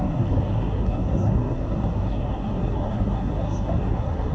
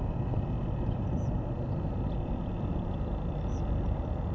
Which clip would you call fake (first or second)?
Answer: first